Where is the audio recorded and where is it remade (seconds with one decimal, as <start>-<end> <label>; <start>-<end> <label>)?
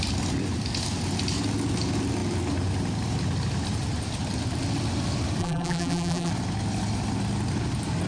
0.0-5.4 recorded; 5.4-6.3 remade; 6.3-8.1 recorded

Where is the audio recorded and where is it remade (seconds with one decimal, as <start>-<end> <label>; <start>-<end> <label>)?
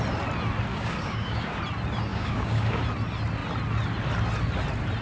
0.0-0.7 recorded; 0.7-1.6 remade; 1.6-2.1 recorded; 2.1-2.8 remade; 2.8-5.0 recorded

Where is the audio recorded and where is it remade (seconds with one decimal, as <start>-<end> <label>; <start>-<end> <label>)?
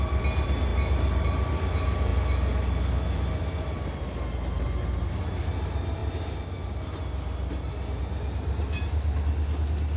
0.0-10.0 recorded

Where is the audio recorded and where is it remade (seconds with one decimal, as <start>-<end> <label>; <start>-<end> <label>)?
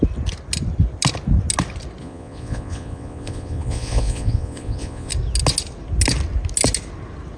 0.0-2.0 recorded; 2.0-5.1 remade; 5.1-7.4 recorded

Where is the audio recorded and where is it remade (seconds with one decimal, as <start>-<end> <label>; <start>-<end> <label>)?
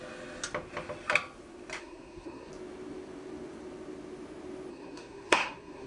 0.0-1.8 recorded; 1.8-2.5 remade; 2.5-4.7 recorded; 4.7-5.9 remade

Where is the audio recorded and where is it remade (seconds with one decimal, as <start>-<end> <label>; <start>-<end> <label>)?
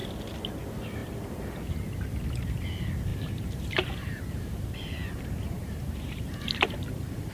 0.0-3.1 recorded; 3.1-7.3 remade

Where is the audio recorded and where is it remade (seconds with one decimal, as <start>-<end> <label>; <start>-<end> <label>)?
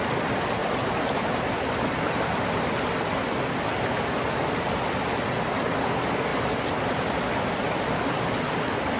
0.0-9.0 recorded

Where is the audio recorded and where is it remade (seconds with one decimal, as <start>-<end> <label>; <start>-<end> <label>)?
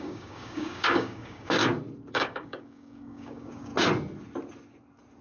0.0-1.6 remade; 1.6-2.1 recorded; 2.1-3.7 remade; 3.7-5.2 recorded